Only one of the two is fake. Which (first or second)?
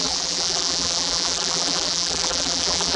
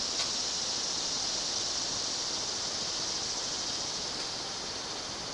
first